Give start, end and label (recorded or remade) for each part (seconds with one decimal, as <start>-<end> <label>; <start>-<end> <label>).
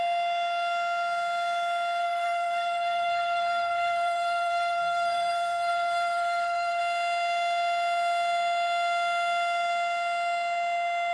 0.0-2.0 recorded; 2.0-6.8 remade; 6.8-11.1 recorded